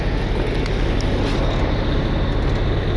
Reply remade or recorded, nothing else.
recorded